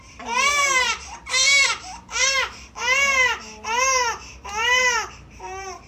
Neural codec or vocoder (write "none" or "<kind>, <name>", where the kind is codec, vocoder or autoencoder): vocoder, BigVGAN v2